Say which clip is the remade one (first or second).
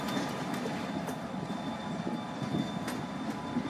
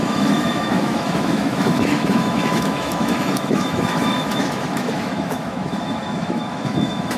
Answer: second